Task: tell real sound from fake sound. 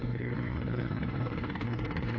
fake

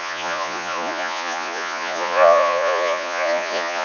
fake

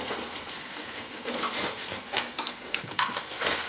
fake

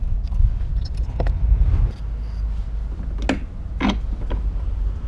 real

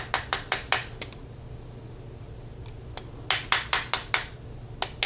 real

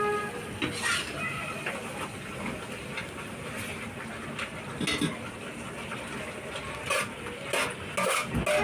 real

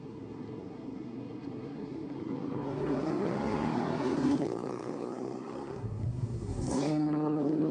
fake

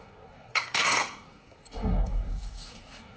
fake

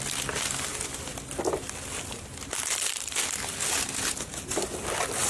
real